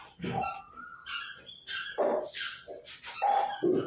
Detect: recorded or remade recorded